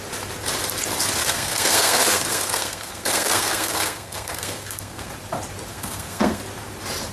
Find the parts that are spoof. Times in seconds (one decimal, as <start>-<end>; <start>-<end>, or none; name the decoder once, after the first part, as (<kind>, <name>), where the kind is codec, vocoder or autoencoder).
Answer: 1.2-5.1 (codec, SNAC); 5.7-6.4